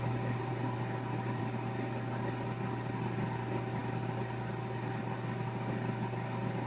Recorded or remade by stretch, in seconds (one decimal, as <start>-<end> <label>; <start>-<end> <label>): 0.0-6.7 recorded